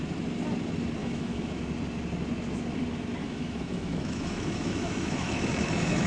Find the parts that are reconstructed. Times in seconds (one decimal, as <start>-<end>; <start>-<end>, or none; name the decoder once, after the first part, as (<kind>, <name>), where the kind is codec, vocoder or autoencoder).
1.0-1.6 (autoencoder, DAC-VAE); 3.2-6.1